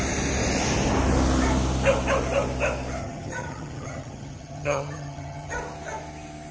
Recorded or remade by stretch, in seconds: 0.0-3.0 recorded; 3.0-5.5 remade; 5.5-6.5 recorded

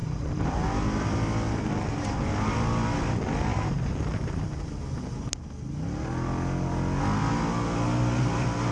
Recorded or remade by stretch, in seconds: 0.0-0.6 remade; 0.6-3.5 recorded; 3.5-4.8 remade; 4.8-8.7 recorded

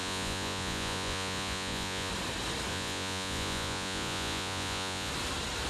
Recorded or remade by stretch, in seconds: 0.0-2.1 remade; 2.1-2.7 recorded; 2.7-5.1 remade; 5.1-5.7 recorded

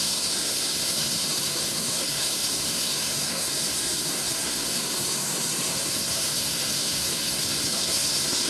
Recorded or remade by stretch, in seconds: 0.0-8.5 remade

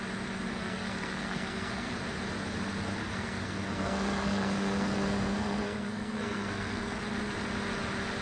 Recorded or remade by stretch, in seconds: 0.0-0.5 recorded; 0.5-1.9 remade; 1.9-3.0 recorded; 3.0-7.0 remade; 7.0-8.2 recorded

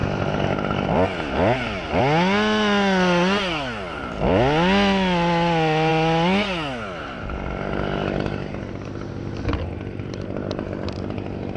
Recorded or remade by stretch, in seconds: 0.0-11.6 recorded

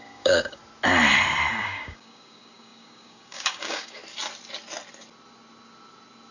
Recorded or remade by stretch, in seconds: 0.0-0.6 remade; 0.6-1.5 recorded; 1.5-4.0 remade; 4.0-6.3 recorded